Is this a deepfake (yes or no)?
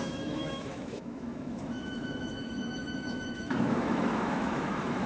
yes